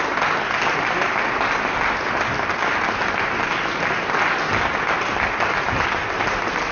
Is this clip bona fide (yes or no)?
yes